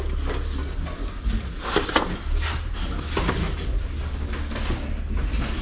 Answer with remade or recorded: recorded